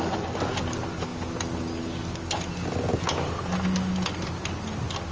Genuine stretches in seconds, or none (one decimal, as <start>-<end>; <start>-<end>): 0.0-5.1

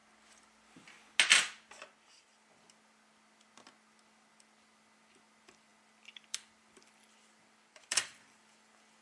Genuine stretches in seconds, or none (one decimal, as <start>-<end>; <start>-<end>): 0.0-4.3

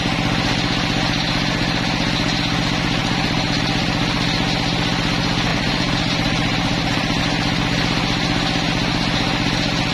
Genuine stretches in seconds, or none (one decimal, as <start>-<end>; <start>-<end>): 0.0-3.0; 3.6-5.5; 7.2-9.9

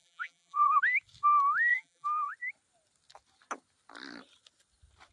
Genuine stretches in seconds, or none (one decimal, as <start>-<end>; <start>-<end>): 0.8-1.7; 2.3-5.1

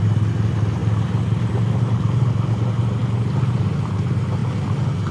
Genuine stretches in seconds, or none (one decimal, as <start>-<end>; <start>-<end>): 0.0-0.8; 1.7-3.0; 3.7-5.1

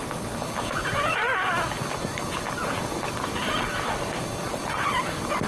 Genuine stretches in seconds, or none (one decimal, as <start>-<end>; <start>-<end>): 0.0-2.6; 4.8-5.5

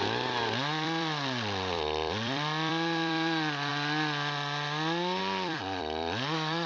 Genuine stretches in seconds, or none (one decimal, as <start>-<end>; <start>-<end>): 3.7-5.2

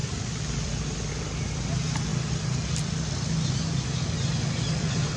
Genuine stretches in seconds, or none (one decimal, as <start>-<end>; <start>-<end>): 1.1-5.2